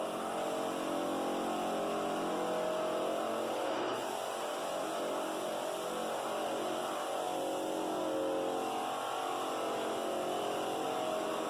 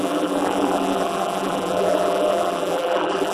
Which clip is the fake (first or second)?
second